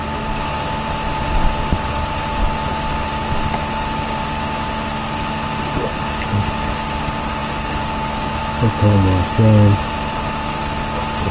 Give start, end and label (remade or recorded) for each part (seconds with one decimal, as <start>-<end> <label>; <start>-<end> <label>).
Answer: 0.0-11.3 recorded